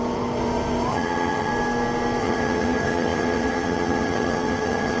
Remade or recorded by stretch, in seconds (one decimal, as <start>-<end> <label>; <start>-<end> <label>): 0.0-0.9 recorded; 0.9-1.5 remade; 1.5-2.2 recorded; 2.2-5.0 remade